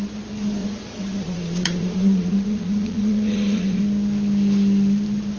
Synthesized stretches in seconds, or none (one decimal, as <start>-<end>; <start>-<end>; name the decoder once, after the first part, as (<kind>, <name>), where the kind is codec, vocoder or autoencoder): 0.6-3.8 (vocoder, Vocos)